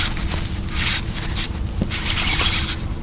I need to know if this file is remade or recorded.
recorded